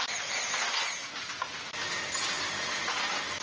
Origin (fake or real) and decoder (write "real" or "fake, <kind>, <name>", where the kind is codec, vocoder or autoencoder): real